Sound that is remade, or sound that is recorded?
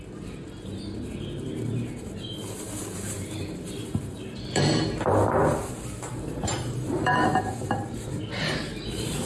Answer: remade